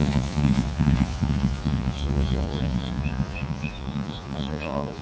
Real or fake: fake